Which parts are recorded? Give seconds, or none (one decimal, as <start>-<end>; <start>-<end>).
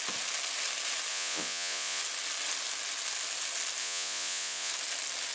0.0-1.1; 2.0-3.8; 4.7-5.3